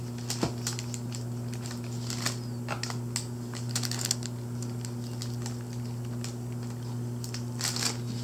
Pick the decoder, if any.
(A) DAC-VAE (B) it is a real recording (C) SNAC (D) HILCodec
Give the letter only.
B